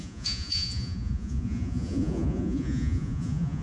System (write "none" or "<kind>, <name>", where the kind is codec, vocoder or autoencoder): vocoder, Vocos